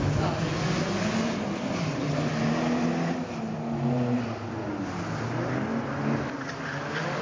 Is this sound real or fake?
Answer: real